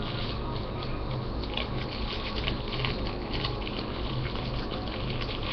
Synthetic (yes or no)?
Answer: no